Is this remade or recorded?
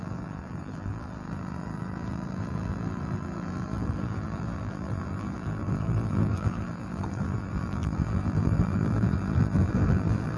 remade